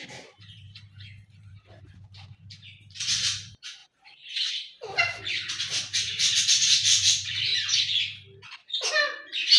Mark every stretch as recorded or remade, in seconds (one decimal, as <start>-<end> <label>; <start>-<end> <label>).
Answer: 0.0-3.8 remade; 3.8-4.5 recorded; 4.5-5.2 remade; 5.2-5.8 recorded; 5.8-7.5 remade; 7.5-8.9 recorded; 8.9-9.6 remade